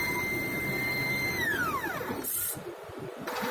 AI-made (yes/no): yes